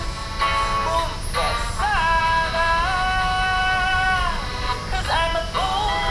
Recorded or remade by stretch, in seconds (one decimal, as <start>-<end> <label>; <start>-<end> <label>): 0.0-3.6 recorded; 3.6-4.5 remade; 4.5-6.1 recorded